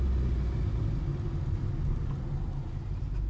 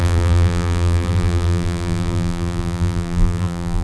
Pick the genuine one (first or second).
first